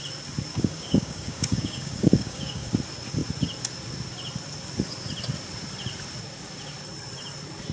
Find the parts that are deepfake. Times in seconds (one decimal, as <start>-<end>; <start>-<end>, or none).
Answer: 0.5-2.7